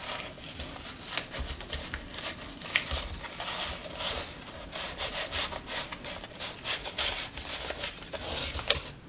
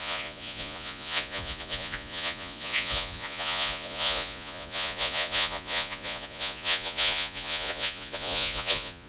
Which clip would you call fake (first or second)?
second